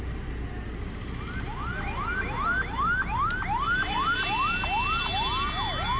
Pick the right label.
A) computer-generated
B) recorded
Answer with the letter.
B